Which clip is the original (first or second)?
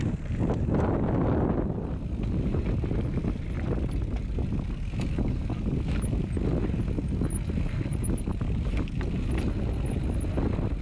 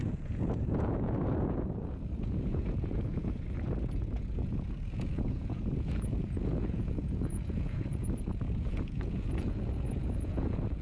first